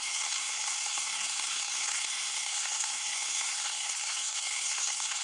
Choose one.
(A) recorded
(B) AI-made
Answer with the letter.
B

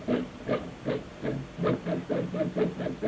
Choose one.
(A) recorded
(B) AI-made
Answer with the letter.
A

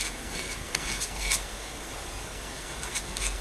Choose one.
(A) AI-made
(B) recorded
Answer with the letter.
A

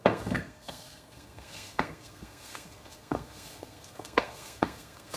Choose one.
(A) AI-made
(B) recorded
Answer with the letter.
A